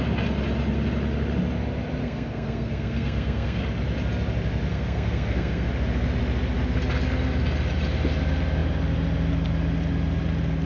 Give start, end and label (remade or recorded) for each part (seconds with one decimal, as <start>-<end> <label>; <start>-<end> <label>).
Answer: 0.0-2.0 recorded; 2.0-3.6 remade; 3.6-4.7 recorded; 4.7-5.7 remade; 5.7-10.7 recorded